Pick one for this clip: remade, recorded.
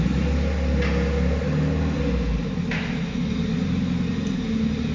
recorded